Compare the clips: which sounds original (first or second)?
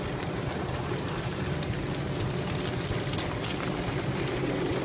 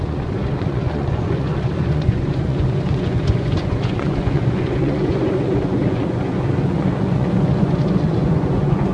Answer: first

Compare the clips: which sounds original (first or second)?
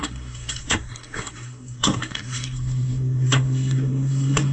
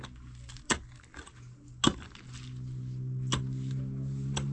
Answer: second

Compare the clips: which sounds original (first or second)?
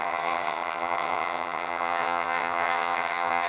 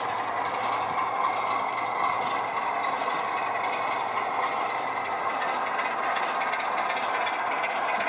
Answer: second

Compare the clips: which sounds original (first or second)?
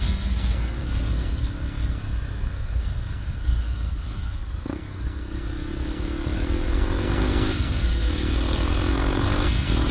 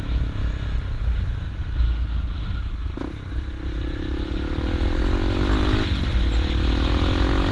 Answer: second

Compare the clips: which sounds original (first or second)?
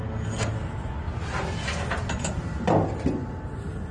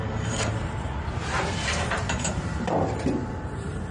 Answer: first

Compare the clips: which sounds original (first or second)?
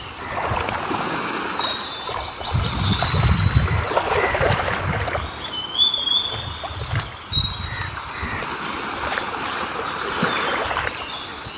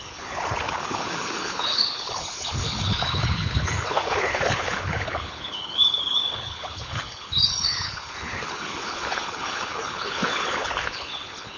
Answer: first